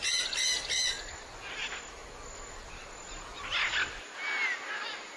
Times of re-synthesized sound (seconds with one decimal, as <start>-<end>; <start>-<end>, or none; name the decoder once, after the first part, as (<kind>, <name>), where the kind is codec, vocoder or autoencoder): none